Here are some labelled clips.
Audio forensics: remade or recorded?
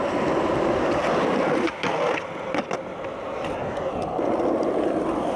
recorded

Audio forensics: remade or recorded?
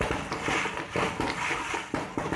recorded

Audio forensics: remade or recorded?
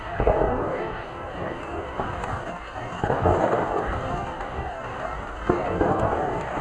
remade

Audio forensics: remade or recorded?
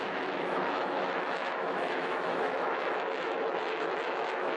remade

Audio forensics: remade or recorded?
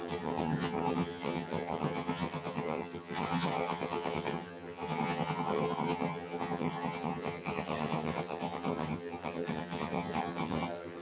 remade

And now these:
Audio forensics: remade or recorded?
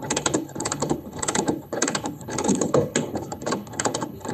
remade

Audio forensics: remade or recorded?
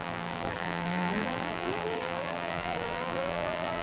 remade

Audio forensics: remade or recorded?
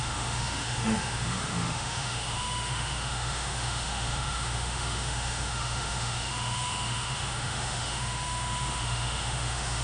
remade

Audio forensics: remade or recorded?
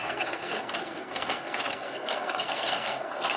remade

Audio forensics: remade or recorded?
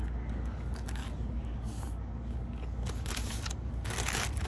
remade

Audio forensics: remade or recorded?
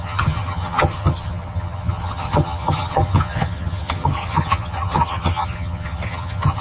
remade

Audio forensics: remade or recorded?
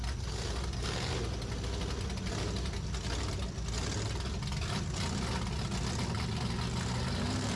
recorded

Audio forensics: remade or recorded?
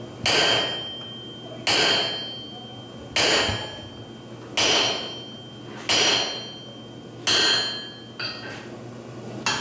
recorded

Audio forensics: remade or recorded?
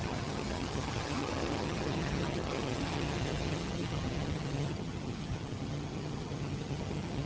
remade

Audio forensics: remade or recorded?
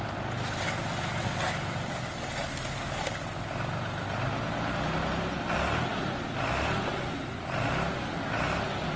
recorded